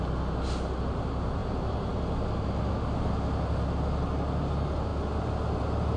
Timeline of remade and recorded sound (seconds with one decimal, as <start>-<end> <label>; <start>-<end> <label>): 0.0-6.0 recorded